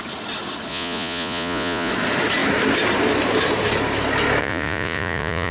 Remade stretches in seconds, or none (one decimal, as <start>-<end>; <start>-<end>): 0.7-1.9; 4.4-5.5